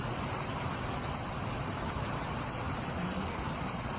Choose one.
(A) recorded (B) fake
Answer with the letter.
A